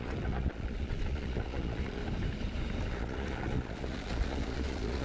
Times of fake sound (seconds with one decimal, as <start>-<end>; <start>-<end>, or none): 0.0-2.0; 2.9-5.0